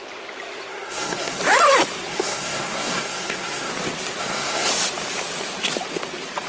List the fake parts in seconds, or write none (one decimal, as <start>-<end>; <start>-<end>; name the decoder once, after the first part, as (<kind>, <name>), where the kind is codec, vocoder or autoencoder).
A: 0.7-1.4 (codec, SNAC); 2.1-3.7; 4.2-4.7

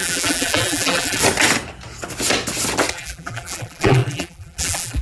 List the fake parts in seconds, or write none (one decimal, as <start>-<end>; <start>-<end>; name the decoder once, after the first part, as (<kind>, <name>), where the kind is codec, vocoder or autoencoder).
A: 0.0-1.2 (vocoder, BigVGAN v2); 2.9-5.0

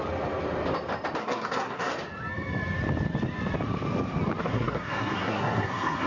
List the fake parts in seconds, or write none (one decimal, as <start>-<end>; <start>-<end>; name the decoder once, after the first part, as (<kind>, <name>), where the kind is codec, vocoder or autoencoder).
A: 1.2-1.9 (codec, SNAC); 4.4-6.1

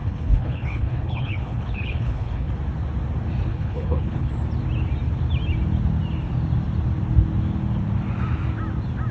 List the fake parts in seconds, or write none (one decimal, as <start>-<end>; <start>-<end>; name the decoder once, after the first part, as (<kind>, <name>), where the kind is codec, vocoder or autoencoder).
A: 0.0-2.5 (codec, HILCodec); 3.5-4.3